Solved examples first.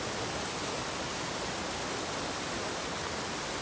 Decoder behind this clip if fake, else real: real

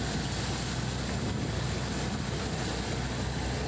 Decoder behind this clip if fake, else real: real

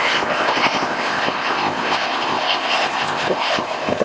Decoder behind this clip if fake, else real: fake, codec, ZipCodec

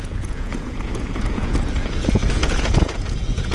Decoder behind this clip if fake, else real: fake, vocoder, Vocos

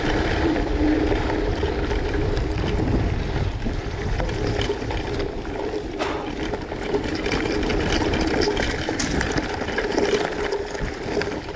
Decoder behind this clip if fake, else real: fake, vocoder, BigVGAN v2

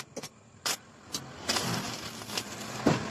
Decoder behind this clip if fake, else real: real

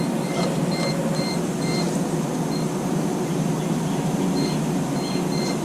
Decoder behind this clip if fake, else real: real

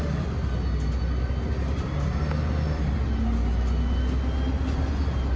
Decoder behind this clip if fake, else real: real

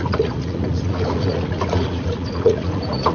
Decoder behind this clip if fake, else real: fake, vocoder, Vocos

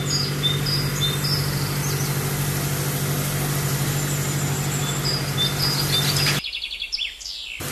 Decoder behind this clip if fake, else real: real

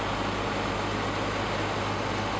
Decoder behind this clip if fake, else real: real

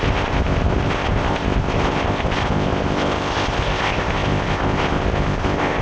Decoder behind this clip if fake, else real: fake, codec, ZipCodec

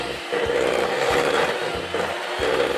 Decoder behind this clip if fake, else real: fake, vocoder, BigVGAN v2